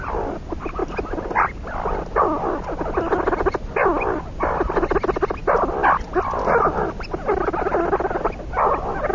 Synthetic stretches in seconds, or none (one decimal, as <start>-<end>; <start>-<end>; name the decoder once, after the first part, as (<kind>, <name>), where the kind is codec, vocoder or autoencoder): none